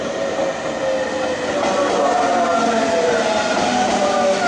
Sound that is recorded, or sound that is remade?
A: recorded